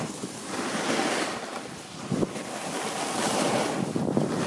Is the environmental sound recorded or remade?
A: recorded